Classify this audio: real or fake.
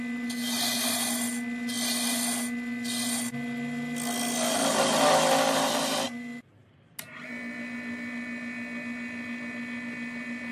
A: real